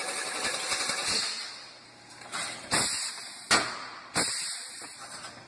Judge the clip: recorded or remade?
recorded